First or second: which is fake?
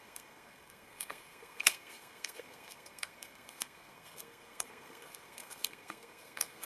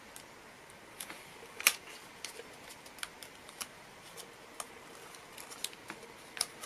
first